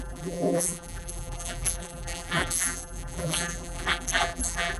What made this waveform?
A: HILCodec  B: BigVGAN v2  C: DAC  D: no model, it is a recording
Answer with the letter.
B